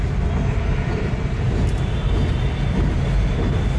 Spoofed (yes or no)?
no